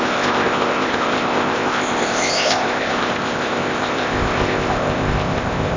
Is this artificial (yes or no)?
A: yes